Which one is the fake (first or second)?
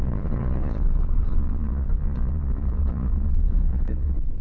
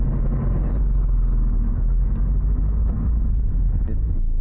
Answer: first